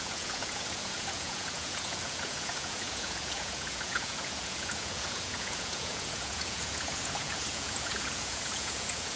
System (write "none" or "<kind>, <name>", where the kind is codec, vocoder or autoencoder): vocoder, Vocos